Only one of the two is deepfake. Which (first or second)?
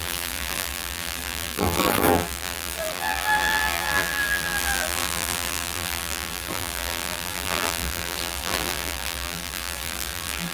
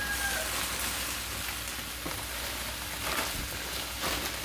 first